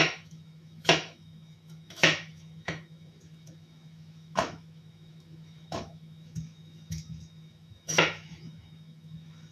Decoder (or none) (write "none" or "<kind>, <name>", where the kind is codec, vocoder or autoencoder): autoencoder, DAC-VAE